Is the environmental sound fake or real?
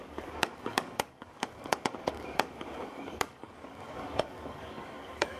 fake